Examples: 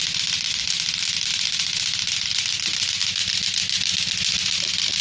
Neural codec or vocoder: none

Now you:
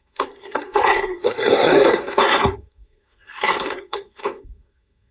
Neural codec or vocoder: codec, SNAC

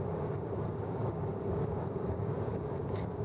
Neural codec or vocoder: codec, DAC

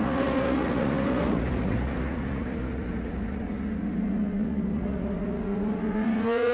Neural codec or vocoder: vocoder, Vocos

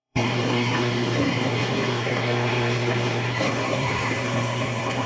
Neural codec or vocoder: codec, SNAC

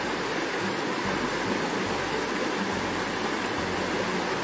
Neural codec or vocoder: none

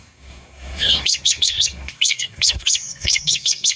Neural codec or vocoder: codec, SNAC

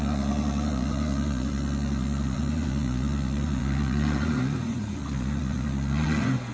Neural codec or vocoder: vocoder, Vocos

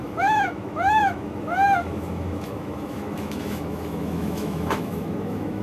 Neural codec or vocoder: autoencoder, DAC-VAE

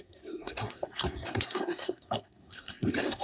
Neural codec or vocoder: codec, SNAC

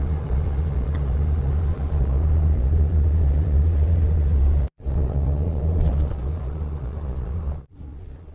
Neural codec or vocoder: vocoder, Vocos